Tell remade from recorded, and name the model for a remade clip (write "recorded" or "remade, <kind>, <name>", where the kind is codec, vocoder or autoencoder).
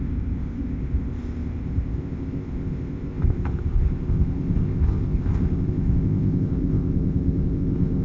remade, codec, ZipCodec